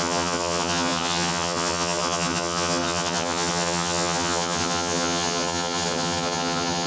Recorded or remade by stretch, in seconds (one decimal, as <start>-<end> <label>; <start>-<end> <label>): 0.0-6.9 remade